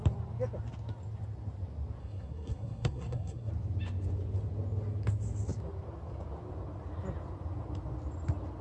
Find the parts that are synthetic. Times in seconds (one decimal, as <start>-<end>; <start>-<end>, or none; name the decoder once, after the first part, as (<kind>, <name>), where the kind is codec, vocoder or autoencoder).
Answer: 2.0-3.5 (codec, SNAC)